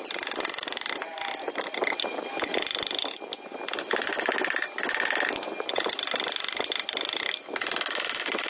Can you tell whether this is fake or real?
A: real